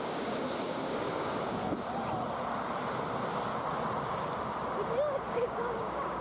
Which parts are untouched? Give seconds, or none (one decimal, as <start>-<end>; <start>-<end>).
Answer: 1.6-5.3